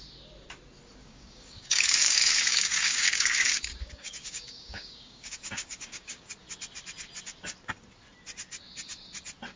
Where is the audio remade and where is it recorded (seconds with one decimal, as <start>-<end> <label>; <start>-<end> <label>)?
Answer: 0.0-1.0 recorded; 1.0-6.3 remade; 6.3-9.6 recorded